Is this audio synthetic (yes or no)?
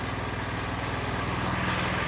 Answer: no